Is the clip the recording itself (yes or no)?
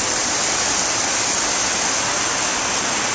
yes